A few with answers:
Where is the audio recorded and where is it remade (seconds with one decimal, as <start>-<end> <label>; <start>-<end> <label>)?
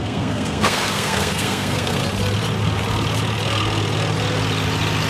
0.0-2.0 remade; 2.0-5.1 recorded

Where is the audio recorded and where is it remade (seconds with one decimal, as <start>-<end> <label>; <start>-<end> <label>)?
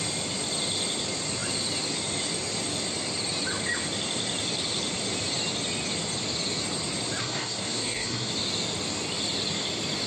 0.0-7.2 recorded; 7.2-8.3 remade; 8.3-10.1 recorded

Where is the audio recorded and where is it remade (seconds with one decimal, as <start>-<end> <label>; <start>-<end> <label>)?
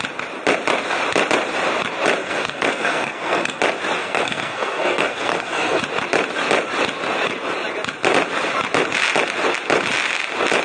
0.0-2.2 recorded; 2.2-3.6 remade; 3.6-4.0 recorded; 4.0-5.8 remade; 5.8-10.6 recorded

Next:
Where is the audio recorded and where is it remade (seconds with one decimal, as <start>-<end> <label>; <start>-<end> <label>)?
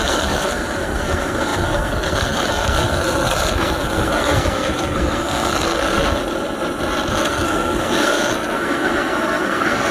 0.0-6.2 remade; 6.2-7.1 recorded; 7.1-9.9 remade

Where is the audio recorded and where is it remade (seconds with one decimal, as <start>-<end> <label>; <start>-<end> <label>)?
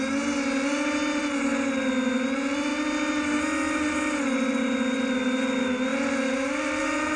0.0-7.2 recorded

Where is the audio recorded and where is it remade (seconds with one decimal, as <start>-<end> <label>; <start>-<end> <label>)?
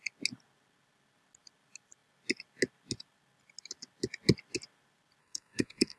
0.0-5.2 recorded; 5.2-6.0 remade